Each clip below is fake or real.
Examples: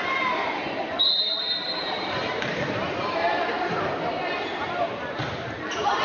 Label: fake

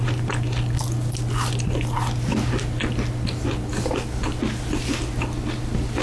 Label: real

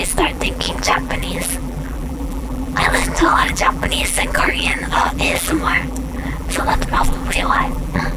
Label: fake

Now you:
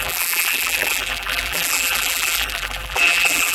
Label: fake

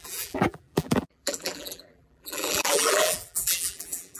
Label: fake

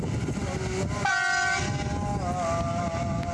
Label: real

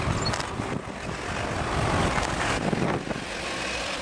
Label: real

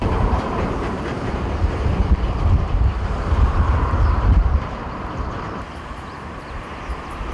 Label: fake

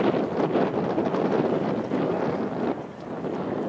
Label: real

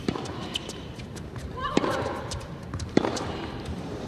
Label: fake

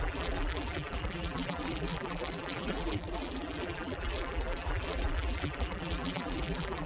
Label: fake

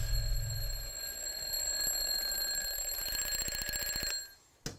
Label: real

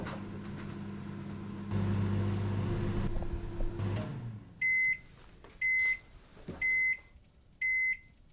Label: real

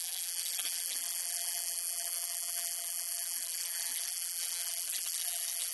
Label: fake